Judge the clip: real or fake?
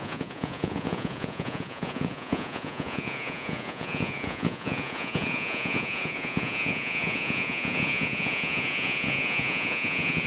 fake